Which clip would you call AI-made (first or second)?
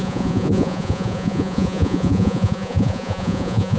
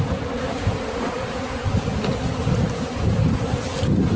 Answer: first